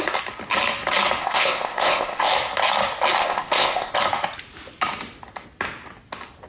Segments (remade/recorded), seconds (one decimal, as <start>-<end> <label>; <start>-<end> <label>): 0.0-1.2 recorded; 1.2-2.3 remade; 2.3-3.2 recorded; 3.2-3.9 remade; 3.9-6.5 recorded